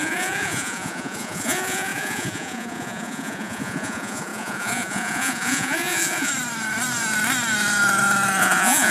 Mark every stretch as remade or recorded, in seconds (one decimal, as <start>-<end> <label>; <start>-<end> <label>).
0.0-6.3 remade; 6.3-8.4 recorded; 8.4-8.9 remade